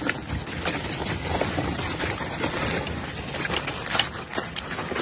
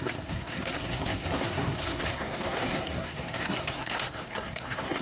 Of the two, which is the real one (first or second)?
first